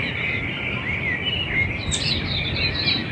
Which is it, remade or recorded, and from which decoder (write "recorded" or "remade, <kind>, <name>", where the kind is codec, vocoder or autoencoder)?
recorded